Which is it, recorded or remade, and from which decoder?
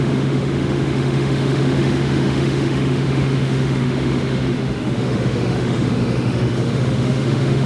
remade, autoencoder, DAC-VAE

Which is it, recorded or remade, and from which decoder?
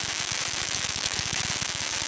remade, autoencoder, DAC-VAE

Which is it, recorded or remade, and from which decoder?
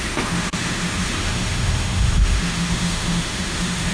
remade, autoencoder, DAC-VAE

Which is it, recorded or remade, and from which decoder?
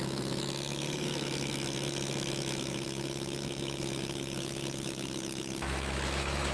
remade, autoencoder, DAC-VAE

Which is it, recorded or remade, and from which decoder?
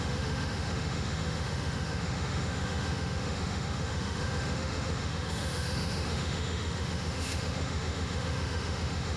remade, autoencoder, DAC-VAE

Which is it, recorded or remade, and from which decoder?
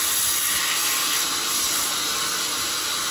recorded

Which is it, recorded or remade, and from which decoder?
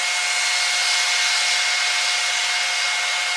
recorded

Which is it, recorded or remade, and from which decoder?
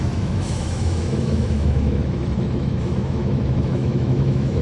remade, autoencoder, DAC-VAE